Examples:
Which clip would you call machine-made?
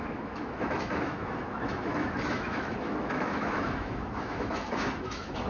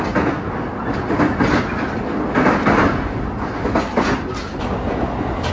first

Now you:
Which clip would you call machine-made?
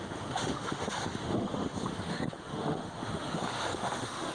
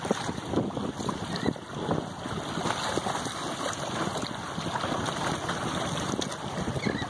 first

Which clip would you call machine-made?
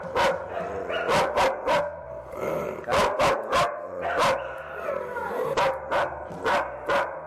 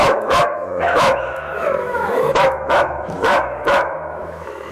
second